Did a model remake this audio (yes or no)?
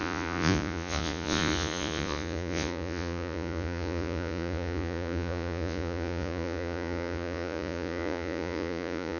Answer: yes